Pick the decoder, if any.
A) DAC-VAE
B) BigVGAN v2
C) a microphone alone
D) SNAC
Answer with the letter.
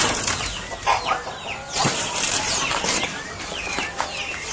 C